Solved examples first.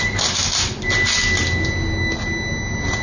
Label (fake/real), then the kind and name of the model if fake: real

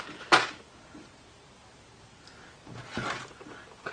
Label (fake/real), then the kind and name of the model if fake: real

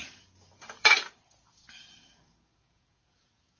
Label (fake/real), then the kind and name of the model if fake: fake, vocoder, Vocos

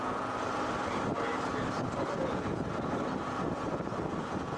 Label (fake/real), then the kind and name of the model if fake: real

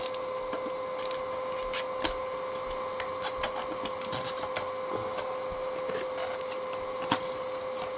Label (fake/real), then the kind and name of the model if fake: real